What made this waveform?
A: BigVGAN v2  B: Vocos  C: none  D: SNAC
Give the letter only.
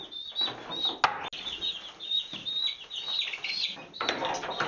C